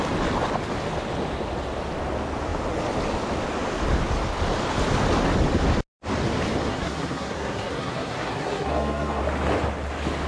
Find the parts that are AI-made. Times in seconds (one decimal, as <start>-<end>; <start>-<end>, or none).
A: 6.6-9.2